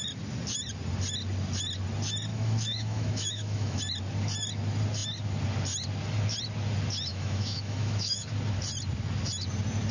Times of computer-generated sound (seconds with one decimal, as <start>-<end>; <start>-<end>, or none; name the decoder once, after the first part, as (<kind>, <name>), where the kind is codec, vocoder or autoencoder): 2.3-3.8 (autoencoder, DAC-VAE); 7.1-8.3